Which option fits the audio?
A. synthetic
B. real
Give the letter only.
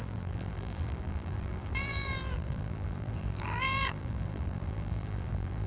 A